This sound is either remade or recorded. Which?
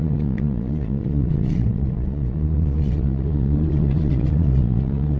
remade